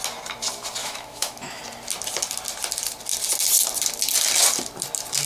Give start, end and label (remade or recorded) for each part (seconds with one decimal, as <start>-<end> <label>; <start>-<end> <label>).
0.0-0.8 recorded; 0.8-1.6 remade; 1.6-5.3 recorded